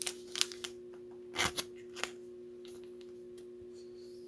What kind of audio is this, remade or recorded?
recorded